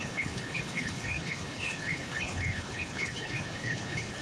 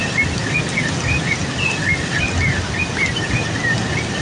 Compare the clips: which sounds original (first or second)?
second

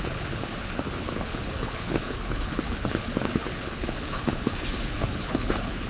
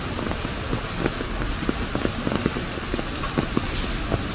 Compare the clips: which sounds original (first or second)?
second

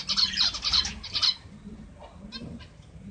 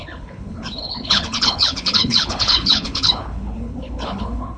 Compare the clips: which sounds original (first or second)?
first